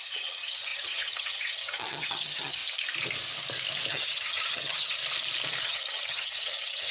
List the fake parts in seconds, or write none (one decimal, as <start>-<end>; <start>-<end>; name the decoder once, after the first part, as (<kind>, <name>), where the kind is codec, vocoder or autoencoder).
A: 0.0-2.6 (vocoder, HiFi-GAN); 3.9-5.0; 5.6-6.9